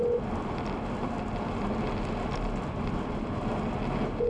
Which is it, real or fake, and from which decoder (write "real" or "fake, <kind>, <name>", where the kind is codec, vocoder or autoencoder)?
real